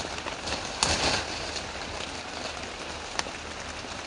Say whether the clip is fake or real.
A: real